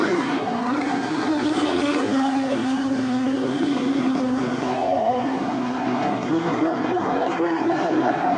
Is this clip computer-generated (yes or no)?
yes